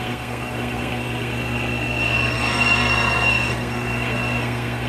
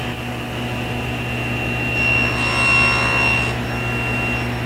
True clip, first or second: second